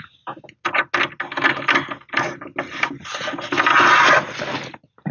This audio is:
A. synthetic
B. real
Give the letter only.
B